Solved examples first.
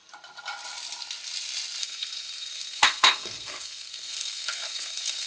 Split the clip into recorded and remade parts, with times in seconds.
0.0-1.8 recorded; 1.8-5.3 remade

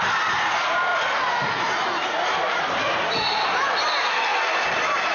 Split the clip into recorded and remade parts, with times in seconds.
0.0-5.1 recorded

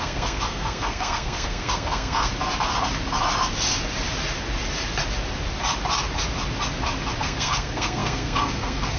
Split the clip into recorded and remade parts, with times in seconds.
0.0-2.3 remade; 2.3-7.2 recorded; 7.2-9.0 remade

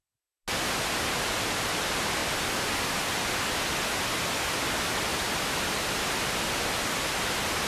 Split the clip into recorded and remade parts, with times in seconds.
0.0-7.7 recorded